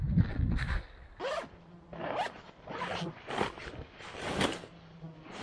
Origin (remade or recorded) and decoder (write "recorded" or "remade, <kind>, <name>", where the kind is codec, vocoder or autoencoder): recorded